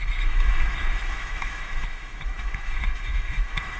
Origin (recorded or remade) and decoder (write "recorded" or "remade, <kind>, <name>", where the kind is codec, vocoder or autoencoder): remade, autoencoder, DAC-VAE